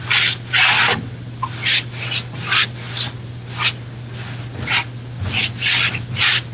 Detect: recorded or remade recorded